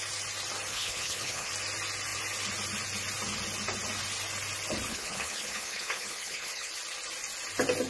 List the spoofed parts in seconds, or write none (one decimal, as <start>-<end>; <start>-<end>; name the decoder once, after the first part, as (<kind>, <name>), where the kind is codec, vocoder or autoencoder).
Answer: 0.7-1.5 (codec, HILCodec); 4.9-6.7